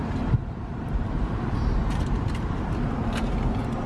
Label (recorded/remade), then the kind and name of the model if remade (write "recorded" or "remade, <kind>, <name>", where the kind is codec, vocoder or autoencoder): remade, vocoder, BigVGAN v2